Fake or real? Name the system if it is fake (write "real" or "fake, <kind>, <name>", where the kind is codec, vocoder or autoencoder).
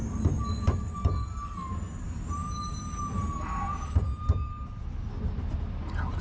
real